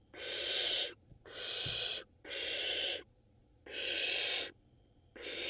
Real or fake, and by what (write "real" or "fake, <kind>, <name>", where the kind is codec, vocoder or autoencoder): fake, vocoder, Vocos